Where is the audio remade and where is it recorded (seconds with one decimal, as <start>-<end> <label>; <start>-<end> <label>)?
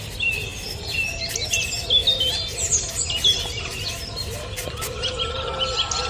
0.0-6.1 recorded